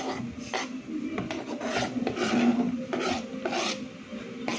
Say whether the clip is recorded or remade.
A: recorded